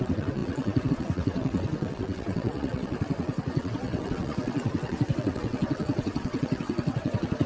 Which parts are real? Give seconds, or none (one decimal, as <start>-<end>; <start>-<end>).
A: none